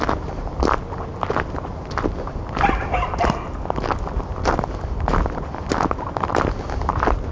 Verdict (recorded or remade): recorded